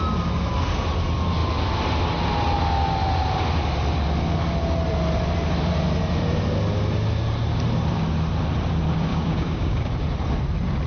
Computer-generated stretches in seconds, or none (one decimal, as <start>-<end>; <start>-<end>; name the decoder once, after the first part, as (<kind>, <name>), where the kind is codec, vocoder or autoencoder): 9.1-9.9 (codec, DAC)